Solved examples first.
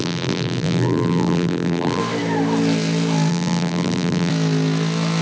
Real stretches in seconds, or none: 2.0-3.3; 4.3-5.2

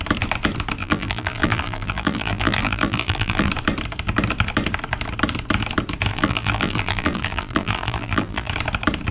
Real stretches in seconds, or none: 0.0-0.8; 3.5-6.1; 8.5-9.1

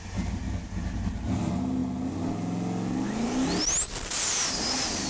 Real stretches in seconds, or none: 0.0-5.1

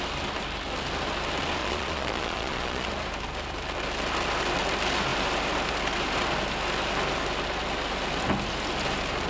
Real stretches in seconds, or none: 0.0-1.6; 2.9-9.3

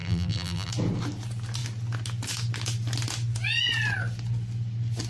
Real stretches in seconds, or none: 0.7-5.1